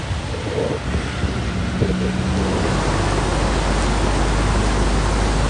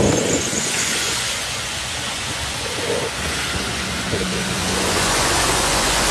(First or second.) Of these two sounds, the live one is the first